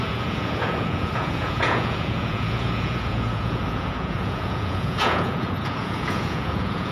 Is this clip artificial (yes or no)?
yes